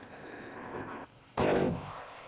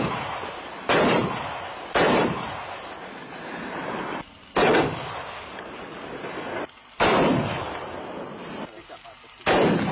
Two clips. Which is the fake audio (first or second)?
first